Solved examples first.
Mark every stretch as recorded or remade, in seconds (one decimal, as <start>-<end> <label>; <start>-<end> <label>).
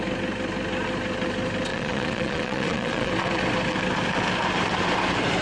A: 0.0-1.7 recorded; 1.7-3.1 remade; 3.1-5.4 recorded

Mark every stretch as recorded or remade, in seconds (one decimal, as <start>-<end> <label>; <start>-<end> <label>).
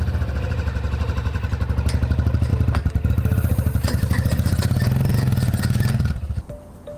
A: 0.0-5.1 recorded; 5.1-6.1 remade; 6.1-7.0 recorded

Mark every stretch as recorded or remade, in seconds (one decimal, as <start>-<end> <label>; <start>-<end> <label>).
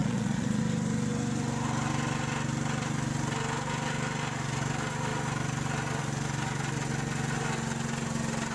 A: 0.0-0.6 remade; 0.6-8.5 recorded